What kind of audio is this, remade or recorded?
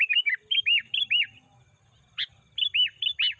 recorded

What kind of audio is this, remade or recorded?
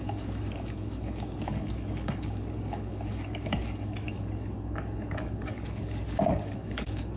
remade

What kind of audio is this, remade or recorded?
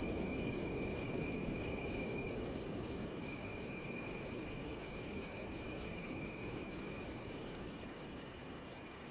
remade